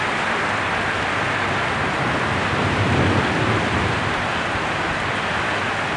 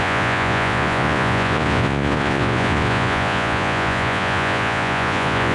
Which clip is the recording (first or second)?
first